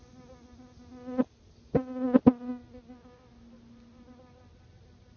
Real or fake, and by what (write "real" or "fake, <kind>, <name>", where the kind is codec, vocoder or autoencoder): real